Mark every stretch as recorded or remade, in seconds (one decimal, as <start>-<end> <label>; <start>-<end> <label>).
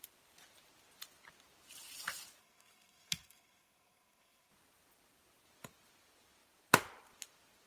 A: 0.0-2.4 recorded; 2.4-4.5 remade; 4.5-7.7 recorded